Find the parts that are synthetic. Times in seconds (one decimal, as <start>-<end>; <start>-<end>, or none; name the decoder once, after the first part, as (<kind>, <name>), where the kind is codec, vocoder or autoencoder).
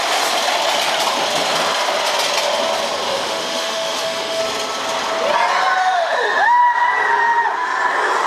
3.1-4.4 (autoencoder, DAC-VAE); 5.8-6.6